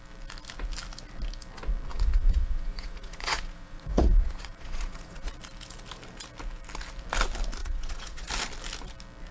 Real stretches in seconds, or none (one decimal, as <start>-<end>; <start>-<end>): 0.0-1.9; 5.3-7.6; 8.3-9.3